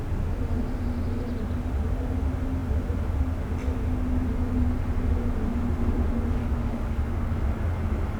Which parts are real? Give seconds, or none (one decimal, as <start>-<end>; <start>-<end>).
0.0-6.4; 7.4-8.2